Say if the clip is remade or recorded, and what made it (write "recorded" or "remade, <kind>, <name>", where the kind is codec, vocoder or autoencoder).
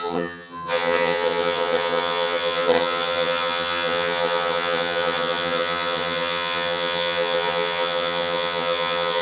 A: remade, vocoder, HiFi-GAN